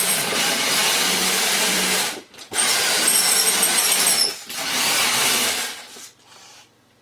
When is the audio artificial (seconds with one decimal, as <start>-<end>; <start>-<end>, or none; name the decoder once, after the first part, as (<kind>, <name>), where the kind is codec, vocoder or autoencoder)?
0.0-0.8 (vocoder, BigVGAN v2); 1.5-7.0